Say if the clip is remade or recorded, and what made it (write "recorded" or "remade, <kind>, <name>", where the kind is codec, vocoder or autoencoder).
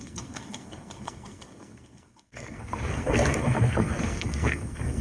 remade, codec, SNAC